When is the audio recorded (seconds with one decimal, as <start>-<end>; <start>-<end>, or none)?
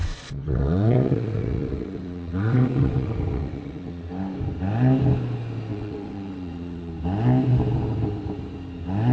4.1-5.7; 6.9-9.1